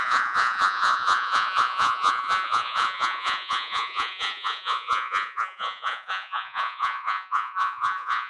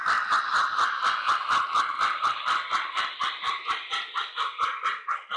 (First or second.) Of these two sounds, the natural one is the second